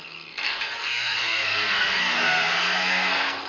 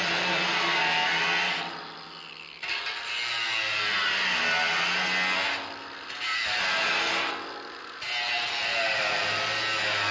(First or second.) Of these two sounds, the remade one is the first